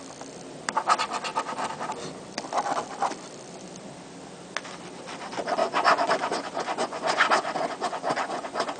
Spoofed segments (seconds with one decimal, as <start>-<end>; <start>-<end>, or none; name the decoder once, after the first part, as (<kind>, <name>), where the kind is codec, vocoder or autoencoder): 5.6-8.8 (vocoder, Vocos)